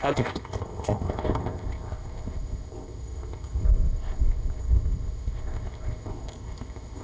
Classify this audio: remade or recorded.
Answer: remade